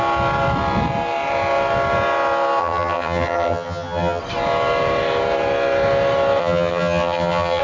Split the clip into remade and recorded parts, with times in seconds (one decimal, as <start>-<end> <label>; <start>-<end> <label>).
0.0-2.6 recorded; 2.6-4.2 remade; 4.2-6.4 recorded; 6.4-7.6 remade